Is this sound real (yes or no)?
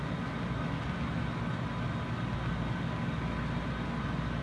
yes